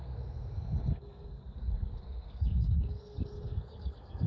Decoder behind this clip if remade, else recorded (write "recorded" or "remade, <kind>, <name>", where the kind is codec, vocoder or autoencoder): remade, codec, SNAC